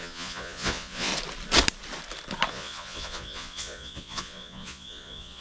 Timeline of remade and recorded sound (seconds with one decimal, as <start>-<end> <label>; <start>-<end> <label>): 0.0-1.1 remade; 1.1-2.5 recorded; 2.5-5.4 remade